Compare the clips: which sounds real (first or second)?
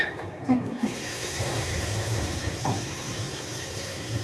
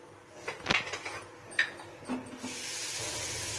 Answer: second